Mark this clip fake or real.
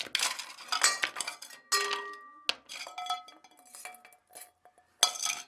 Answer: real